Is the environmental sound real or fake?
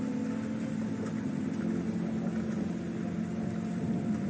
real